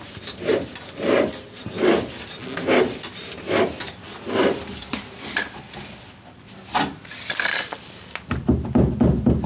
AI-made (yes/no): no